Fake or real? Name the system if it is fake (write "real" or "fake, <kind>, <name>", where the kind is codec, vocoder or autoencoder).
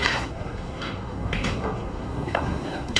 fake, codec, SNAC